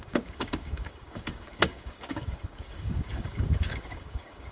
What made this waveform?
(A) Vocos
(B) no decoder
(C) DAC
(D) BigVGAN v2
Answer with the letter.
C